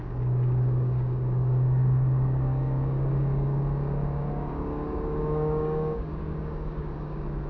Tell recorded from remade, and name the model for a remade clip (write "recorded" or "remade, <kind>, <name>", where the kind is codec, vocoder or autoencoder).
remade, codec, DAC